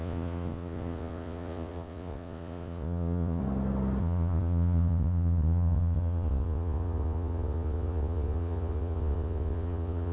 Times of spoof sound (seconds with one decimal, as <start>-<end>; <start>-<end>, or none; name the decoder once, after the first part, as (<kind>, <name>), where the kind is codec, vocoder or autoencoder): 0.0-3.4 (vocoder, Vocos); 4.0-10.1